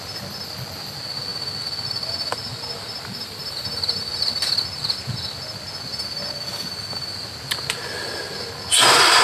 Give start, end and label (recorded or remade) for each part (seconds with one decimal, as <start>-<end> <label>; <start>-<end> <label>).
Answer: 0.0-1.3 recorded; 1.3-4.3 remade; 4.3-9.2 recorded